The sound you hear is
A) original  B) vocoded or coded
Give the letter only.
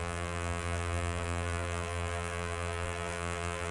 B